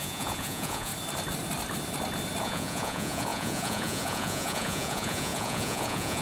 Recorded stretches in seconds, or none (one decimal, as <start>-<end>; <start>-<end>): 0.9-2.4